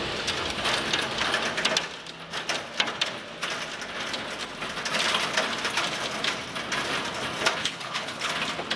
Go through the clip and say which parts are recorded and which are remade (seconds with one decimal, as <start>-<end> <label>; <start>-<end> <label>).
0.0-7.6 recorded; 7.6-8.3 remade; 8.3-8.8 recorded